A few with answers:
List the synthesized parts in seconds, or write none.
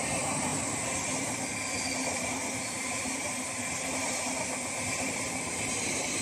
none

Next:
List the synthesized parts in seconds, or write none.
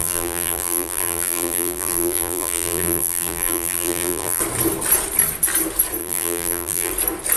0.0-4.4 (vocoder, BigVGAN v2); 6.0-6.9